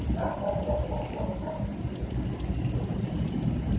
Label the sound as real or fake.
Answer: real